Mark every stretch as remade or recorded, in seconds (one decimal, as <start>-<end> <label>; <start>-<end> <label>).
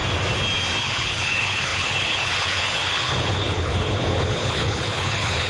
0.0-0.8 recorded; 0.8-5.5 remade